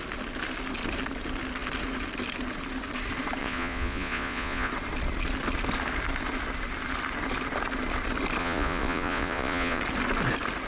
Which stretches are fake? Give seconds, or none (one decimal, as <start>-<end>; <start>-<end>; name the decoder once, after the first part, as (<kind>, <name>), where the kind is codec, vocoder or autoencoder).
3.4-4.7 (vocoder, Vocos); 8.4-9.8